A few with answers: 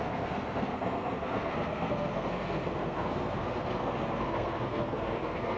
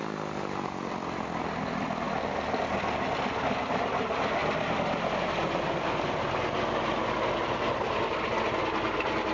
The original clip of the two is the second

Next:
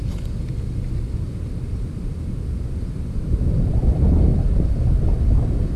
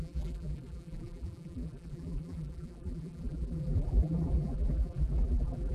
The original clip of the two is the first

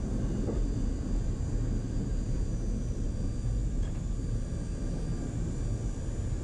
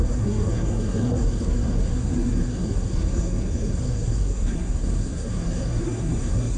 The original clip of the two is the first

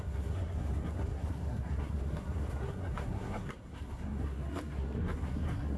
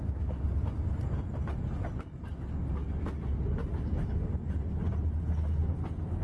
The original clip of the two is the second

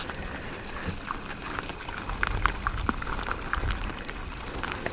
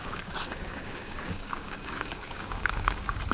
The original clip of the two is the first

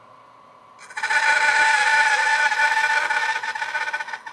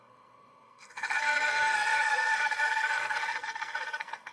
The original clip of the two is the first